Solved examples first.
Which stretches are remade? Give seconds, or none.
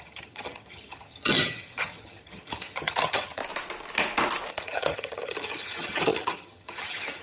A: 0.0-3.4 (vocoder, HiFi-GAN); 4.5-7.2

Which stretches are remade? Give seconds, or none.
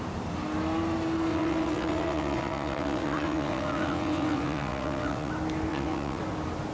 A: 1.3-5.3 (vocoder, WaveNeXt); 5.7-6.2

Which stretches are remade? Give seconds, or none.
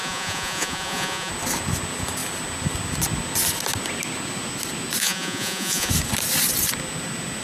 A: 0.0-1.3 (vocoder, Vocos); 5.0-5.9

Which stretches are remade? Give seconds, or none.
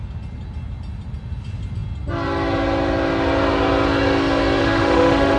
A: 4.6-5.4 (autoencoder, DAC-VAE)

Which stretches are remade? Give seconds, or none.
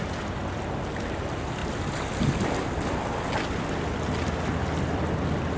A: none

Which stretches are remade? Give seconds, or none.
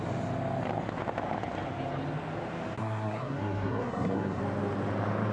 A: 2.8-4.4 (codec, SNAC)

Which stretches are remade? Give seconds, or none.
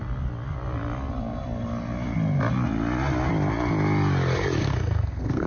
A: 4.6-5.5 (codec, SNAC)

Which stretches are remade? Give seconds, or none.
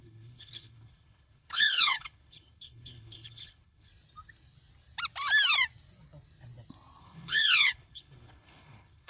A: 0.0-3.9 (codec, HILCodec); 7.0-9.1